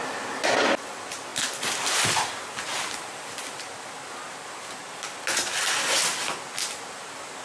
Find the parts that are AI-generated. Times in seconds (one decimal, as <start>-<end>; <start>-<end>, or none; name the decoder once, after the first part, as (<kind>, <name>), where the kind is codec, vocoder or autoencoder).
none